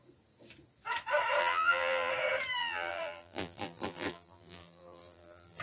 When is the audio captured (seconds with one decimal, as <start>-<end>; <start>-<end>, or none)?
0.0-1.4; 2.1-2.6